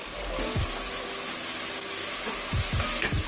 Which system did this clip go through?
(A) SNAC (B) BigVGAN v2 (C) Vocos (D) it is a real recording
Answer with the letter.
D